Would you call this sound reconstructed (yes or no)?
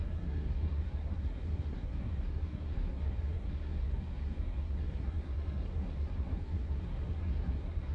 yes